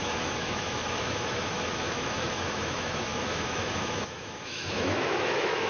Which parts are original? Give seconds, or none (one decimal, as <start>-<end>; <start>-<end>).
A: none